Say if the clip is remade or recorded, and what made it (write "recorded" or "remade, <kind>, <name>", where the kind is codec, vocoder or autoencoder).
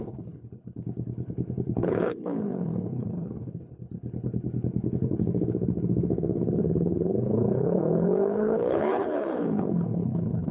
remade, codec, HILCodec